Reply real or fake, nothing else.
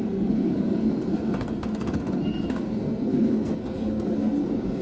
fake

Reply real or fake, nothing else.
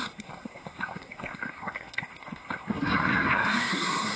fake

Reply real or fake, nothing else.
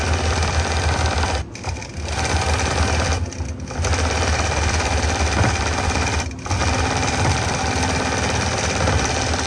real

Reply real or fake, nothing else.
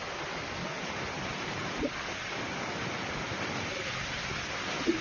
real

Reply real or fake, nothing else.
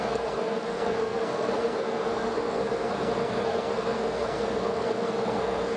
fake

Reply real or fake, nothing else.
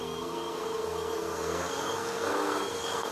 fake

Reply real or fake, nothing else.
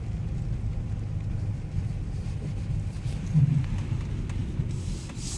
real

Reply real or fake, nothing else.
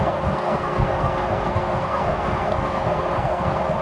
fake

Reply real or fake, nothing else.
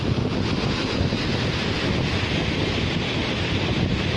real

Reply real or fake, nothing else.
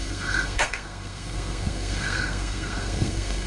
fake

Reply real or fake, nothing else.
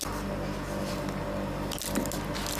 real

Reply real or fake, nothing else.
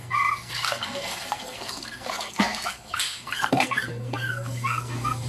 fake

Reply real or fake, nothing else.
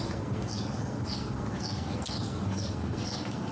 fake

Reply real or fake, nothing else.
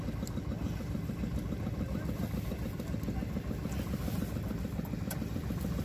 real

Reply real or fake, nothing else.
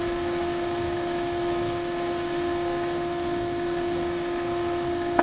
fake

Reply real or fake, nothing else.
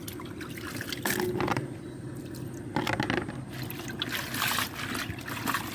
real